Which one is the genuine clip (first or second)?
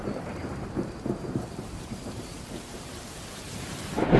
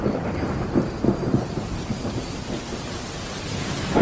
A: second